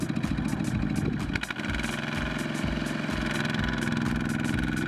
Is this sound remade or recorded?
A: recorded